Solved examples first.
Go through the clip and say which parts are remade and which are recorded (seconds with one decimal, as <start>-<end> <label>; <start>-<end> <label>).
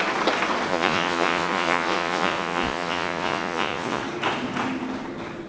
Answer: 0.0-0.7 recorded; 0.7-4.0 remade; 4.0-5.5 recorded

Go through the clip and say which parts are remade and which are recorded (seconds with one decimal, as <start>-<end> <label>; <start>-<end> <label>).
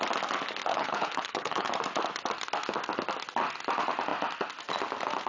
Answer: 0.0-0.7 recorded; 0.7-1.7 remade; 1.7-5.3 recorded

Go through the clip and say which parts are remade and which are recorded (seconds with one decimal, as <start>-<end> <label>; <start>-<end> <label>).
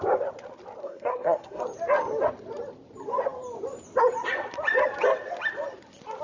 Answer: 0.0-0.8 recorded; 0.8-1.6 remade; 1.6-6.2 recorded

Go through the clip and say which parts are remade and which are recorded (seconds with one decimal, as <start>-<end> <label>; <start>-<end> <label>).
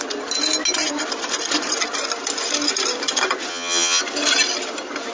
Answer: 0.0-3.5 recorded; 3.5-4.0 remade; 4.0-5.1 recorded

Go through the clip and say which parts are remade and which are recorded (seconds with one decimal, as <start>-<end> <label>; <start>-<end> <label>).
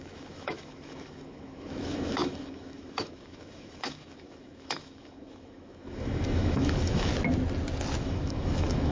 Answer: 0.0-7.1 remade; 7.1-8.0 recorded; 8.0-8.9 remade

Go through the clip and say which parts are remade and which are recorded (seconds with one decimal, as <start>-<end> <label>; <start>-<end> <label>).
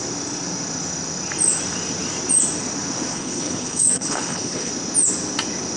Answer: 0.0-3.1 recorded; 3.1-4.7 remade; 4.7-5.8 recorded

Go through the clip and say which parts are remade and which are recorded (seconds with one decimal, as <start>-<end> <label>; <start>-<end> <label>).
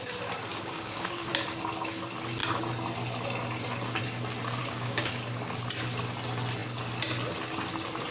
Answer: 0.0-0.5 recorded; 0.5-1.3 remade; 1.3-4.6 recorded; 4.6-5.1 remade; 5.1-8.1 recorded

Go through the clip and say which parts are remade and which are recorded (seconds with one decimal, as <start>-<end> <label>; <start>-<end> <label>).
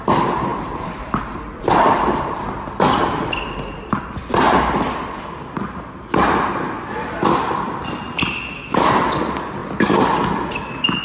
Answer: 0.0-0.5 recorded; 0.5-1.6 remade; 1.6-11.0 recorded